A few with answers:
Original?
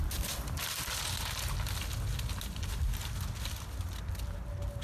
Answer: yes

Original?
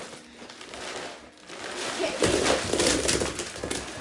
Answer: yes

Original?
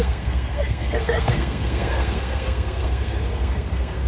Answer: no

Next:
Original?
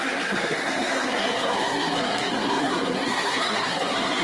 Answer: no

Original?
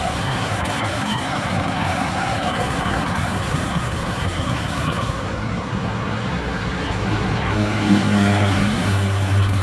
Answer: no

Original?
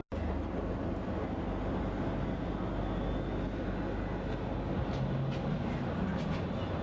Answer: yes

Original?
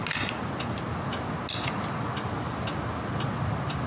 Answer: yes